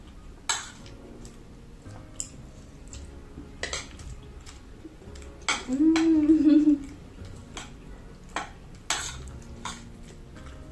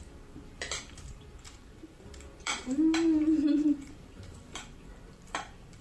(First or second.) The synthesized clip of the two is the second